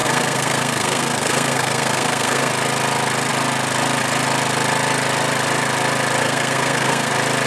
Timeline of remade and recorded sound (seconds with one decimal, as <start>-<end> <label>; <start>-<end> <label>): 0.0-2.5 remade; 2.5-6.2 recorded; 6.2-7.1 remade; 7.1-7.5 recorded